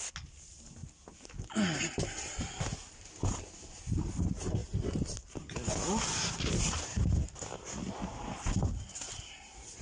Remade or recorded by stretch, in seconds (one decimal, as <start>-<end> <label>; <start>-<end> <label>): 0.0-9.8 recorded